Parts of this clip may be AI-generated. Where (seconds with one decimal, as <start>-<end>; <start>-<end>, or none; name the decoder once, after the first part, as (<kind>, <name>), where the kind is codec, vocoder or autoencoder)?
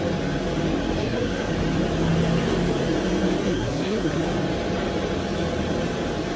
1.0-1.5 (codec, SNAC); 3.4-4.2